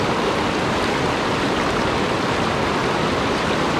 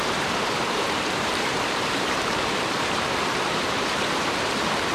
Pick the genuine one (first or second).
first